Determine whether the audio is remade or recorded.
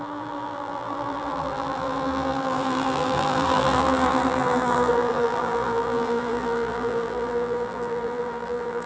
remade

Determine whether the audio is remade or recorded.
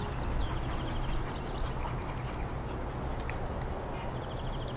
recorded